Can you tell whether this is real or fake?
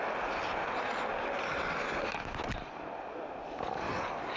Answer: real